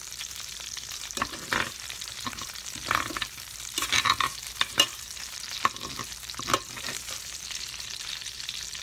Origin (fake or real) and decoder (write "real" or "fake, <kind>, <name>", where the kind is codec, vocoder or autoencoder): fake, vocoder, BigVGAN v2